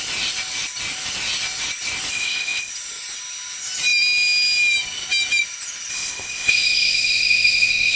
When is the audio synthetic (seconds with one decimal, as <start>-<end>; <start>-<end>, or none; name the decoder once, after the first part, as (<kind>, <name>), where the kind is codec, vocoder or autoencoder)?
2.1-2.7 (codec, ZipCodec); 5.9-8.0